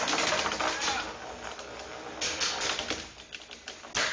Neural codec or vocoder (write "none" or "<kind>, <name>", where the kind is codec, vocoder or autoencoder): none